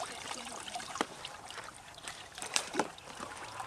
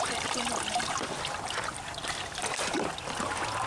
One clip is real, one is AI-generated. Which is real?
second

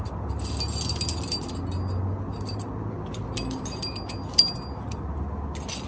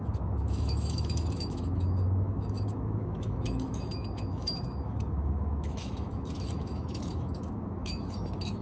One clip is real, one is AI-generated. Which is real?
first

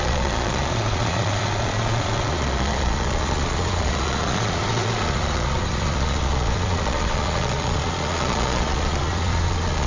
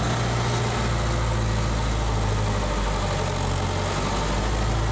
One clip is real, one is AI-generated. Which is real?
second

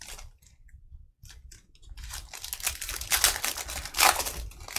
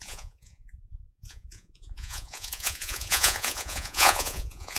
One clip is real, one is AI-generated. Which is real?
first